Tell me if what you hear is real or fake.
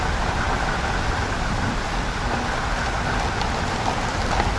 real